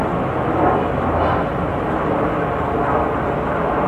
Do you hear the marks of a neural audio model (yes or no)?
no